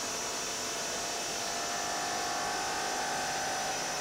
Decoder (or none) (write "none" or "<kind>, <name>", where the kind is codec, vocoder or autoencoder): none